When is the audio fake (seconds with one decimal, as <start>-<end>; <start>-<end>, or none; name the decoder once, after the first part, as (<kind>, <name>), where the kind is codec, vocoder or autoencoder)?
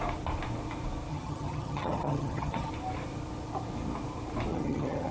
1.1-2.7 (vocoder, HiFi-GAN); 4.5-5.1